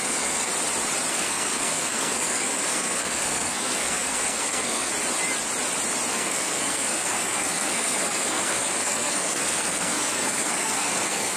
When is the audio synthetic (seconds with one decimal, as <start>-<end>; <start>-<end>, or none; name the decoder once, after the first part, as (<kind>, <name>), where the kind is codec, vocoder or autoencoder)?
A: 0.0-0.5 (codec, SNAC); 1.1-4.9; 6.1-11.4